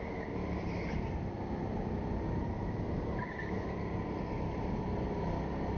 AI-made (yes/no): no